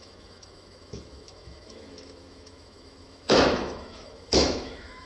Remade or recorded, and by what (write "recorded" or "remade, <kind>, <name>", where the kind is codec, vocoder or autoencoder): remade, autoencoder, DAC-VAE